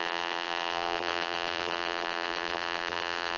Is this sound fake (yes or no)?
yes